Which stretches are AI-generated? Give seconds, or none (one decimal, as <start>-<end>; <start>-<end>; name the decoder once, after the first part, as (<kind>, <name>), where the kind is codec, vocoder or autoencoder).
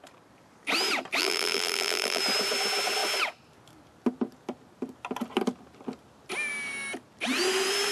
1.2-2.2 (vocoder, BigVGAN v2)